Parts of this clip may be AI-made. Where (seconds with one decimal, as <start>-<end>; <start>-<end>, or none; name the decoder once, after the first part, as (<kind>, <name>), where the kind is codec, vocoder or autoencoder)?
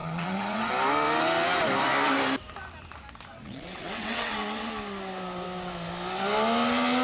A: 0.0-0.7 (vocoder, WaveNeXt); 3.4-4.7